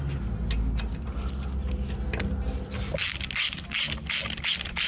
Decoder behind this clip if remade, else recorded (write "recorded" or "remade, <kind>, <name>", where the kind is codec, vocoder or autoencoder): recorded